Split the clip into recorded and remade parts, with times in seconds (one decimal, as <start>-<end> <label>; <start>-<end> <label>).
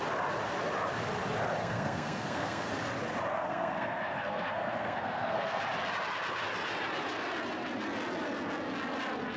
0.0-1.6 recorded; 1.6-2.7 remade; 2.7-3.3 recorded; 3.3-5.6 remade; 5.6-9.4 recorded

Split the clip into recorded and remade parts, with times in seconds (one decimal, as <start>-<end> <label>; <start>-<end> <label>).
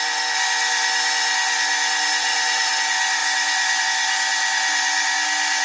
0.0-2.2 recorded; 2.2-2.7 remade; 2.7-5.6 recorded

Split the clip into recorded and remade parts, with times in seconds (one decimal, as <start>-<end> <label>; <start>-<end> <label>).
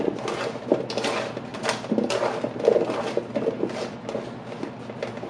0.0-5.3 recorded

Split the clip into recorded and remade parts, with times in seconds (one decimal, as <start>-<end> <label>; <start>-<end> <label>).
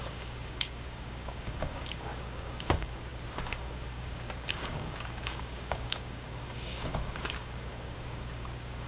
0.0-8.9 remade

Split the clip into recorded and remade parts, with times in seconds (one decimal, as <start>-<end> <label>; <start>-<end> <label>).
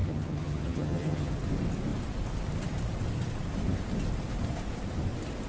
0.0-1.3 remade; 1.3-5.5 recorded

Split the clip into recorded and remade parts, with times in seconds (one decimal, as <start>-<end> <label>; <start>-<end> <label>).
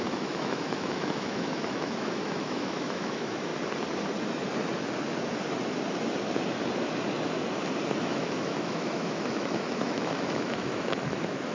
0.0-3.5 remade; 3.5-8.0 recorded; 8.0-11.5 remade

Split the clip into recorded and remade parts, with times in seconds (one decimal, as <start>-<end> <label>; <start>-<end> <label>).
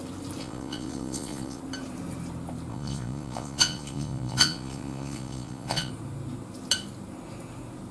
0.0-0.4 recorded; 0.4-1.6 remade; 1.6-2.7 recorded; 2.7-5.9 remade; 5.9-7.9 recorded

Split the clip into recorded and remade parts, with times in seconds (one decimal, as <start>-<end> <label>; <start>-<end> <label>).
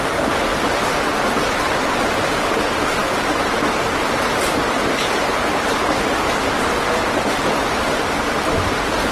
0.0-9.1 recorded